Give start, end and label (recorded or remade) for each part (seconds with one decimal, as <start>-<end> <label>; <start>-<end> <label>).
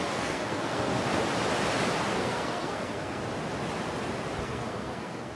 0.0-0.9 remade; 0.9-2.1 recorded; 2.1-3.2 remade; 3.2-4.4 recorded; 4.4-5.4 remade